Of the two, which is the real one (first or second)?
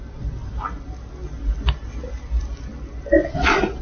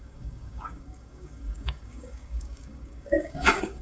first